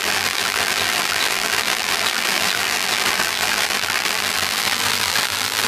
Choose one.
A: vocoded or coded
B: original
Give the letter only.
A